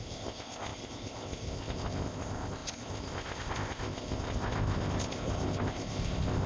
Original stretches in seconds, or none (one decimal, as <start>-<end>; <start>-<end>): none